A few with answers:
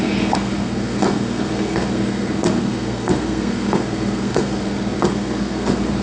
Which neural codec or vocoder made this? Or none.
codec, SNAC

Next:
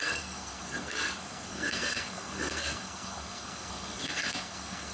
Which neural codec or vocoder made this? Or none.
codec, SNAC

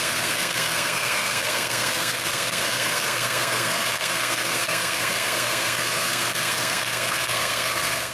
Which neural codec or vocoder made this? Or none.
codec, SNAC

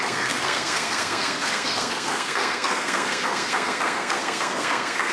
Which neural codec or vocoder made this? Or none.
codec, SNAC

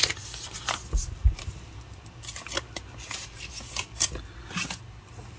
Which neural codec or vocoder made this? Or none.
none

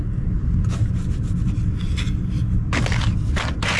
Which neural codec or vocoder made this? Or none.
none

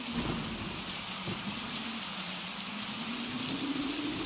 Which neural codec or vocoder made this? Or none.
none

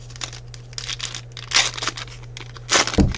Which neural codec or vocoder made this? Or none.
none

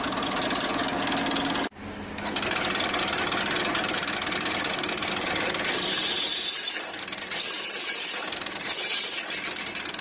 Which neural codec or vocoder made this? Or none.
none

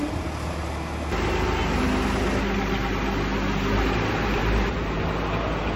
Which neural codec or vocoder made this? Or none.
none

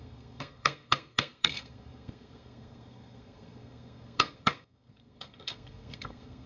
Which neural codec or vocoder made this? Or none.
codec, SNAC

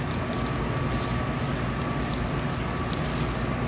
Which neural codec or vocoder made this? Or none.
none